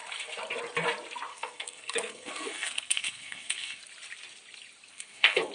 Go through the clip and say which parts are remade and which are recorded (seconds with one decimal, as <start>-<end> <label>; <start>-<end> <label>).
0.0-1.3 recorded; 1.3-3.8 remade; 3.8-4.9 recorded; 4.9-5.5 remade